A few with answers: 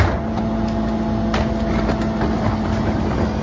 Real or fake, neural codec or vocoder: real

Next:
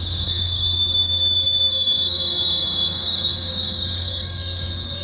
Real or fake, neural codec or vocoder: fake, codec, DAC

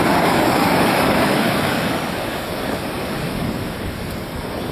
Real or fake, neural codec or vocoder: fake, codec, DAC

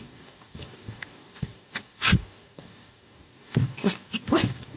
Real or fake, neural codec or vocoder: fake, codec, DAC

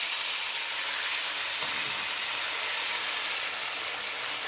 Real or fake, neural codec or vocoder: real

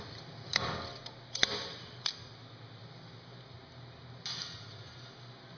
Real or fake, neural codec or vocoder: real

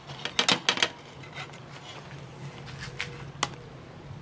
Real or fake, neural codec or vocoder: real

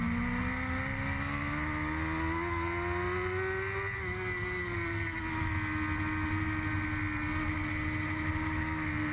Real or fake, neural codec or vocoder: real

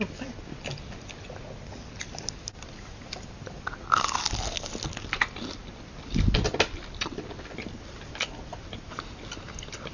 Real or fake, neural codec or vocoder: real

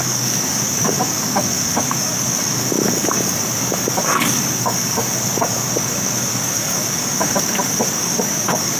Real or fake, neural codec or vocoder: fake, codec, DAC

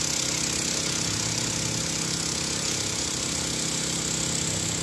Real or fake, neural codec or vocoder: real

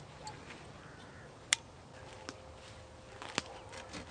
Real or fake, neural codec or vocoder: real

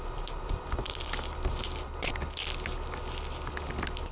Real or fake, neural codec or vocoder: real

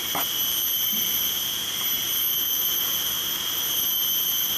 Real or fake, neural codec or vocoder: real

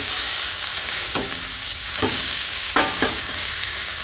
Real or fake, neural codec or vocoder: fake, codec, DAC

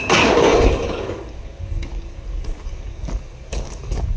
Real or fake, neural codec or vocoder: fake, codec, DAC